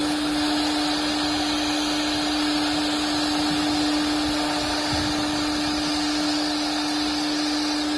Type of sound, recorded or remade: recorded